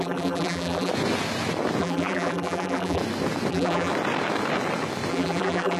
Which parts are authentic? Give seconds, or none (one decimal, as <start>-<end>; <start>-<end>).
0.9-1.8; 3.0-3.5; 3.9-5.1